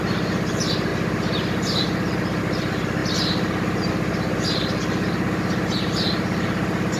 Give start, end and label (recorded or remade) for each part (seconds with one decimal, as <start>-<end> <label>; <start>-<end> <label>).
0.0-7.0 recorded